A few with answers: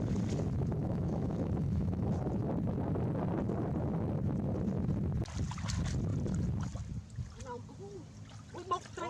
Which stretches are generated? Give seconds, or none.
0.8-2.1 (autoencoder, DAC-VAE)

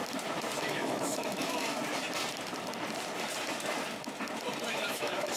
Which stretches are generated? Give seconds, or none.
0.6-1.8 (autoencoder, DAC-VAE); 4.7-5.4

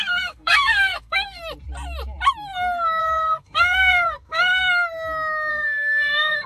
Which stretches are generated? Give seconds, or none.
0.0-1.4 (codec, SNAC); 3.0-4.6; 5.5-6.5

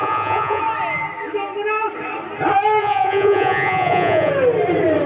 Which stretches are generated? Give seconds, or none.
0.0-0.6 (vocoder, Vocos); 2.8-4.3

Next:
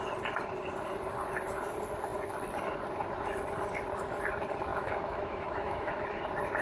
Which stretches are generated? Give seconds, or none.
4.7-5.9 (autoencoder, DAC-VAE)

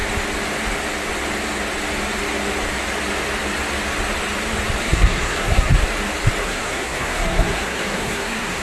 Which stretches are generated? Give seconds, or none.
4.8-5.7 (codec, SNAC); 6.4-8.6

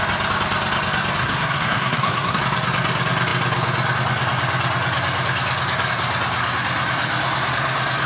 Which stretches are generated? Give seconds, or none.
1.2-2.4 (codec, SNAC)

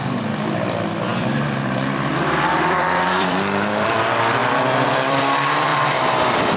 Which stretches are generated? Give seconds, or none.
1.1-4.0 (vocoder, BigVGAN v2); 4.4-5.2; 5.7-6.6